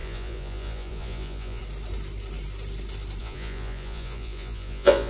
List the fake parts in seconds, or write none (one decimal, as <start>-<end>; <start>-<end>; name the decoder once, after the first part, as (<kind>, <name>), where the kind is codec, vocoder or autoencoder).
0.0-1.6 (vocoder, Vocos); 3.2-5.1

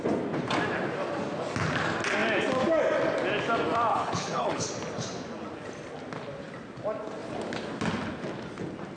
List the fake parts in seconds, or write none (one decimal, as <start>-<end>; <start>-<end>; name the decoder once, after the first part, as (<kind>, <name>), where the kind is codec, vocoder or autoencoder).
3.9-4.7 (codec, HILCodec)